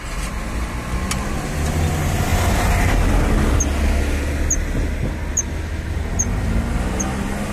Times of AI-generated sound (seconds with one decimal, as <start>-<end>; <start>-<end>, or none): none

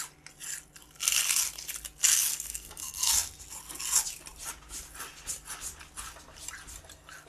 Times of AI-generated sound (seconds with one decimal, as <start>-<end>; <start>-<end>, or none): 2.3-3.1

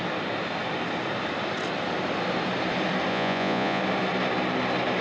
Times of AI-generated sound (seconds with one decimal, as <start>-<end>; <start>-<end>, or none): 3.1-3.8

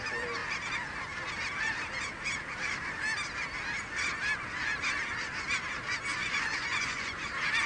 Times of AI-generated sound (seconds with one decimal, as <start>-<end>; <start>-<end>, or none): 6.2-7.3

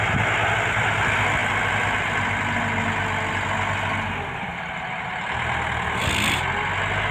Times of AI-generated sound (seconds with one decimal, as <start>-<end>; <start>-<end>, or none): none

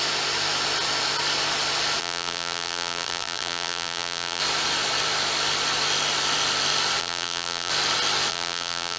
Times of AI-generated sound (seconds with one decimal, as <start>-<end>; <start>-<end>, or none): 2.0-4.4; 7.0-7.7; 8.3-9.0

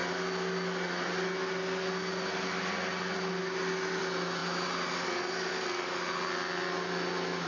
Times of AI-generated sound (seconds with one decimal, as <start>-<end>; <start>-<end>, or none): none

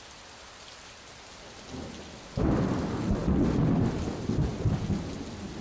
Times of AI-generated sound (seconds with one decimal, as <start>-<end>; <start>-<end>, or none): none